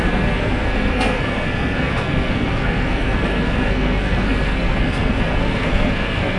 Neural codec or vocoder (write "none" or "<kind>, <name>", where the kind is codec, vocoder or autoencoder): codec, SNAC